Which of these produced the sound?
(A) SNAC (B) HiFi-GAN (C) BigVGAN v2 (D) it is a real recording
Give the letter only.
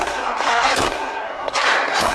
A